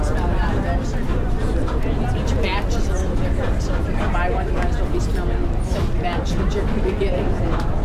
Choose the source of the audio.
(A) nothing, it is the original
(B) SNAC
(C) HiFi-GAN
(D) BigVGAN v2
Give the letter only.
A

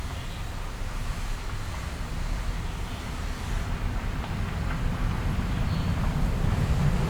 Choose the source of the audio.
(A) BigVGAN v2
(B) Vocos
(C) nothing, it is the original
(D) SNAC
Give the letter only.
A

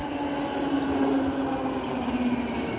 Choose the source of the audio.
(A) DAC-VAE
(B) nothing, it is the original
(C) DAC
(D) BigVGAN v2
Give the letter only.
B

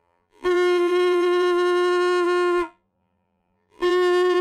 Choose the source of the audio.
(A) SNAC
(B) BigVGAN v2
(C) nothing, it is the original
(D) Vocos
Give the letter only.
B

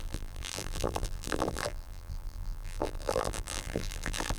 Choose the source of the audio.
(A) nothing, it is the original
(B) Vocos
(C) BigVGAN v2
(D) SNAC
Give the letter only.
C